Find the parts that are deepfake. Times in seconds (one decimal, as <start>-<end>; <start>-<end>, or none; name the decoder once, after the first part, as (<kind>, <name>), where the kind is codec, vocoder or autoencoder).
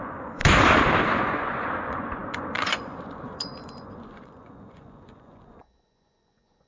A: 0.0-0.4 (vocoder, Vocos); 1.2-6.7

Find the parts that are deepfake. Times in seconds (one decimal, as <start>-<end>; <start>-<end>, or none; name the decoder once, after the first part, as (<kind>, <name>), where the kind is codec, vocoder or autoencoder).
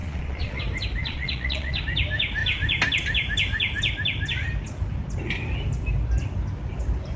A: 0.0-0.6 (vocoder, Vocos); 1.0-1.8